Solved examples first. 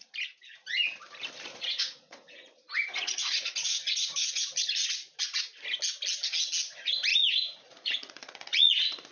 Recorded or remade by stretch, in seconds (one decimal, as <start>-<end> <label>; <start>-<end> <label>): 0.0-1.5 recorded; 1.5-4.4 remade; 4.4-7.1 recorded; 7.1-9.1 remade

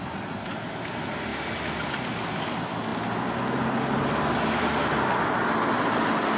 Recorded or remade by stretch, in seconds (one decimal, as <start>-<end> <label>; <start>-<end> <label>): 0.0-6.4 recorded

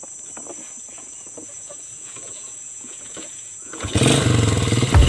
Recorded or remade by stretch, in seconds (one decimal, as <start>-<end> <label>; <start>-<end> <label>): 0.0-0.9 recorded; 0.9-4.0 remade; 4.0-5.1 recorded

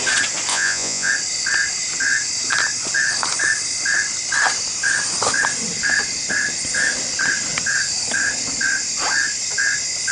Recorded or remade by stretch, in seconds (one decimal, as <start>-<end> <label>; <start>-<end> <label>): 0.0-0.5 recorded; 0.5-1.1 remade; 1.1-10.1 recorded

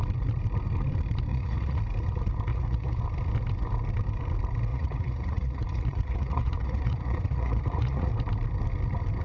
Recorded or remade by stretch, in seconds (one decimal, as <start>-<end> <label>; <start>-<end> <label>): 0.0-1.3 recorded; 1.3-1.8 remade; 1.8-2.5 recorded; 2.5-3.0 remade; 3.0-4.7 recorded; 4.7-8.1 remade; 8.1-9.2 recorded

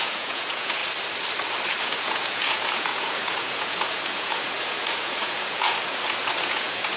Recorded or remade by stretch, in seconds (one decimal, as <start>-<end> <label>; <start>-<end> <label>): 0.0-0.8 remade; 0.8-1.8 recorded; 1.8-7.0 remade

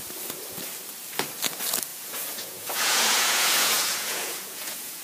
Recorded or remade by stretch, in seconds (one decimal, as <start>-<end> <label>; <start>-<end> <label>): 0.0-1.9 recorded; 1.9-5.0 remade